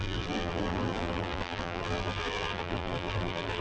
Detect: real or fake fake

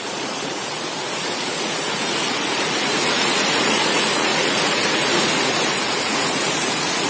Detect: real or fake fake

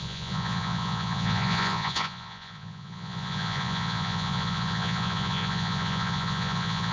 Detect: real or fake fake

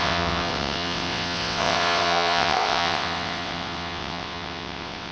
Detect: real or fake fake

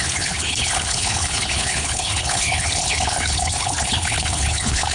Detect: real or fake fake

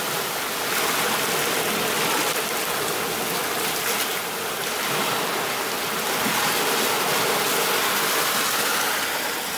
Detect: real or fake real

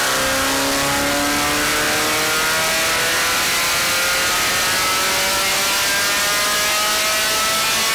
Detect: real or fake real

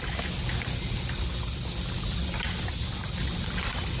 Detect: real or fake real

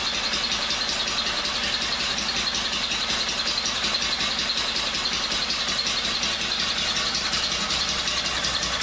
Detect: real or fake real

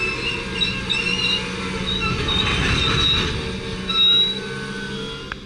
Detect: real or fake real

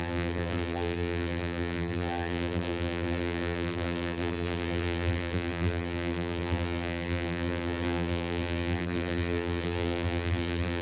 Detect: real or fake fake